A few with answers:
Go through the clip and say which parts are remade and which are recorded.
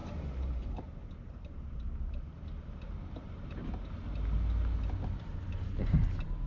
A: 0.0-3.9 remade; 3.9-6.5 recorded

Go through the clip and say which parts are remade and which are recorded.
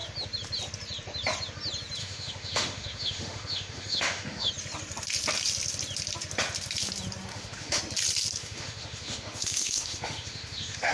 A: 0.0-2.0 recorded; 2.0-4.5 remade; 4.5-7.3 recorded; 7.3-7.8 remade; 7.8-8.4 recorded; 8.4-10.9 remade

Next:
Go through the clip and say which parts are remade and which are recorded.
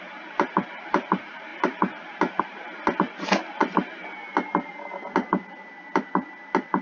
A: 0.0-6.8 recorded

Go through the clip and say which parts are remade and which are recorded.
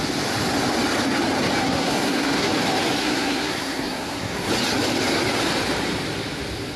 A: 0.0-1.6 recorded; 1.6-2.5 remade; 2.5-3.0 recorded; 3.0-4.5 remade; 4.5-6.8 recorded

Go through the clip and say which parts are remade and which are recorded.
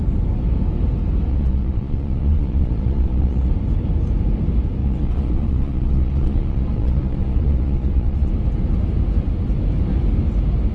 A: 0.0-1.3 recorded; 1.3-3.5 remade; 3.5-4.8 recorded; 4.8-8.3 remade; 8.3-10.7 recorded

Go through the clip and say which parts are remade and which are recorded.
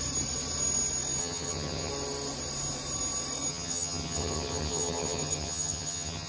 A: 0.0-1.2 recorded; 1.2-1.9 remade; 1.9-3.5 recorded; 3.5-6.3 remade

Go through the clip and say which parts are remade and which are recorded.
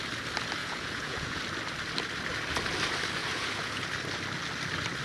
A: 0.0-0.6 recorded; 0.6-1.4 remade; 1.4-3.2 recorded; 3.2-3.9 remade; 3.9-5.0 recorded